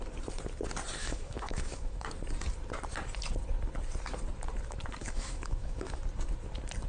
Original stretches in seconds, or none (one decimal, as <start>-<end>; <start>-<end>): 0.0-1.0; 2.1-5.0; 6.0-6.9